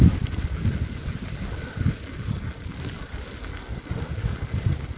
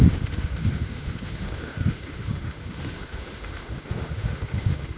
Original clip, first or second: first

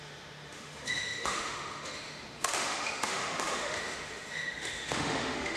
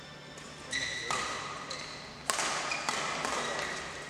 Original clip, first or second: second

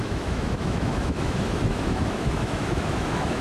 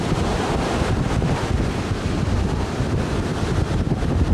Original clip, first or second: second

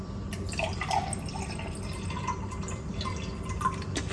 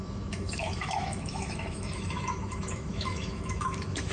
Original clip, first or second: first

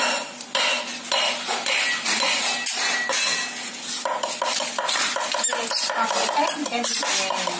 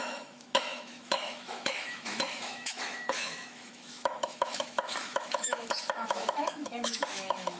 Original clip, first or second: first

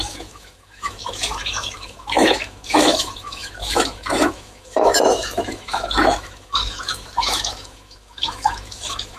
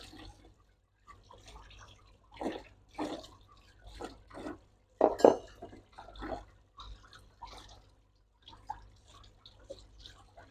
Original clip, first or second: second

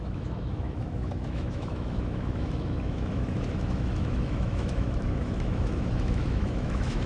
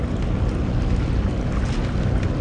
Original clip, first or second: second